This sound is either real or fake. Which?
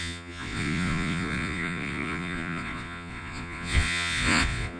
fake